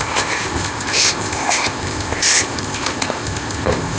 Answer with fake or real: fake